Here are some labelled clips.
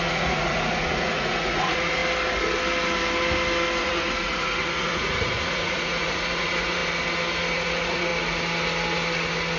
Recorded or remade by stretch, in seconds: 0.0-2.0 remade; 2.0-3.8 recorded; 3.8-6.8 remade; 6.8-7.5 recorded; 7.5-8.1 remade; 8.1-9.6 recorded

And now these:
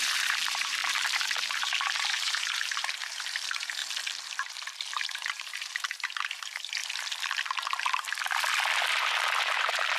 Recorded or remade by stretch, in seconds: 0.0-0.8 remade; 0.8-1.4 recorded; 1.4-3.8 remade; 3.8-5.0 recorded; 5.0-6.8 remade; 6.8-8.9 recorded; 8.9-10.0 remade

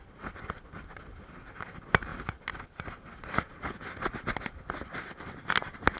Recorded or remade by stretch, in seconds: 0.0-6.0 recorded

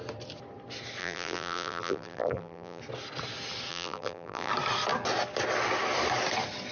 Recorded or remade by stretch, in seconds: 0.0-1.0 recorded; 1.0-2.8 remade; 2.8-3.7 recorded; 3.7-4.5 remade; 4.5-6.7 recorded

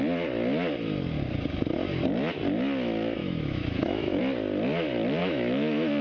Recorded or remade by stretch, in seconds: 0.0-3.2 recorded; 3.2-4.2 remade; 4.2-5.2 recorded; 5.2-6.0 remade

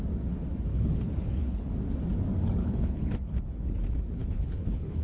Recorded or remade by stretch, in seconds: 0.0-0.7 recorded; 0.7-1.7 remade; 1.7-2.6 recorded; 2.6-3.8 remade; 3.8-4.2 recorded; 4.2-5.0 remade